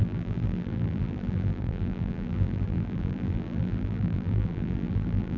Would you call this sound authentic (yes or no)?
no